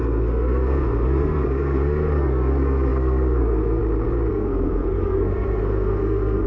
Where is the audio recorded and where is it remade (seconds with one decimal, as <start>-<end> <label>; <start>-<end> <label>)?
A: 0.0-3.8 remade; 3.8-4.3 recorded; 4.3-6.5 remade